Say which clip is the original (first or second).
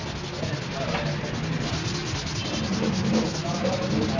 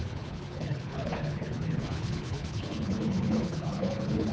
first